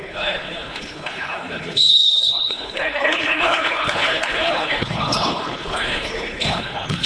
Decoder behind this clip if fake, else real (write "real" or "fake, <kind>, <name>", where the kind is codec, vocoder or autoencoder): fake, codec, HILCodec